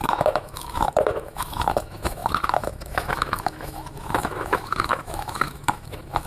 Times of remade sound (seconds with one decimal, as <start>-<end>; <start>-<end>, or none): 0.0-6.3